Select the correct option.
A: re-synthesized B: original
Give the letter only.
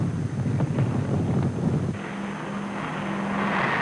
B